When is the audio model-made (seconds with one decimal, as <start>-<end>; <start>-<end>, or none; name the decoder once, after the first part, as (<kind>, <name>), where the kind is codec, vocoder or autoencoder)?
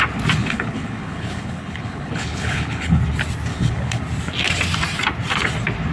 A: 0.4-3.0 (codec, HILCodec); 3.5-4.0